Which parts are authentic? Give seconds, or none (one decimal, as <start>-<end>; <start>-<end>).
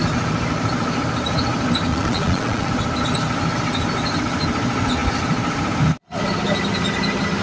0.0-1.9; 2.7-7.4